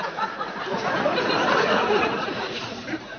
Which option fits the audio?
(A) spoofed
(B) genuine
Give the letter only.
A